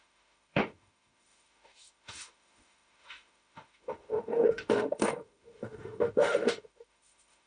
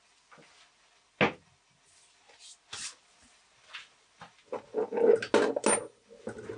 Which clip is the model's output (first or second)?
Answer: first